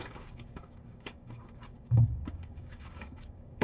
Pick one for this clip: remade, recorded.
remade